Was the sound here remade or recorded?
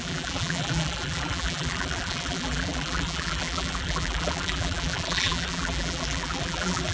remade